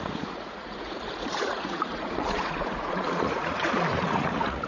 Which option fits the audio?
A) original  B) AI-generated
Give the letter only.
B